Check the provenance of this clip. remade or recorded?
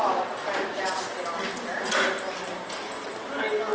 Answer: recorded